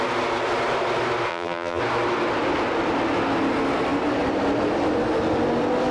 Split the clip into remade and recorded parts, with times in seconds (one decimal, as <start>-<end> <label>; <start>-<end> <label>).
0.0-1.3 recorded; 1.3-1.8 remade; 1.8-5.9 recorded

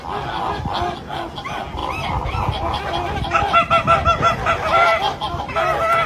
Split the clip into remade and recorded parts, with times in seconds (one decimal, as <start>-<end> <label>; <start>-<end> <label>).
0.0-1.8 recorded; 1.8-5.4 remade; 5.4-6.1 recorded

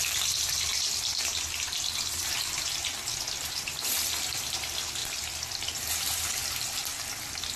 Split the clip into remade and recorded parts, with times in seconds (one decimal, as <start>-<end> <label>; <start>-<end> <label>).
0.0-5.0 recorded; 5.0-5.5 remade; 5.5-6.4 recorded; 6.4-7.6 remade

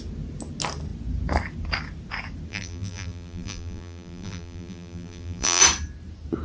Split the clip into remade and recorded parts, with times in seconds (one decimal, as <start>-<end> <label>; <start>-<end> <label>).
0.0-2.5 recorded; 2.5-5.6 remade; 5.6-6.4 recorded

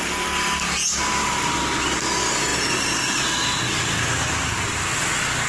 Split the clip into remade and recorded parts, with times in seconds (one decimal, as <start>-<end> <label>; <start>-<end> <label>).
0.0-2.5 recorded; 2.5-4.5 remade; 4.5-5.5 recorded

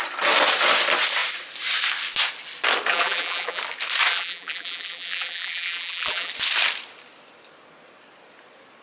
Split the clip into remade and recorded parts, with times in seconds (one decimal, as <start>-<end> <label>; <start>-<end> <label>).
0.0-2.9 recorded; 2.9-3.6 remade; 3.6-4.1 recorded; 4.1-6.3 remade; 6.3-8.8 recorded

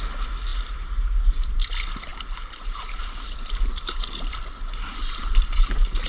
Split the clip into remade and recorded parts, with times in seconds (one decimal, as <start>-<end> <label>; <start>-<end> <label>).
0.0-2.1 recorded; 2.1-6.1 remade

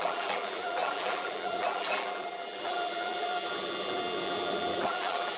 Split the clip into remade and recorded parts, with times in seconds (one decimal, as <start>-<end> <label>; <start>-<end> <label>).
0.0-5.4 remade